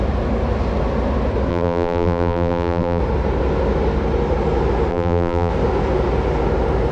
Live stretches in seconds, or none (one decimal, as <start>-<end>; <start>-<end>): 0.0-1.5; 3.0-4.9; 5.5-6.9